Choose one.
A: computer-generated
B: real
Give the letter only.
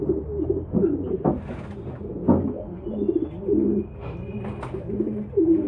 B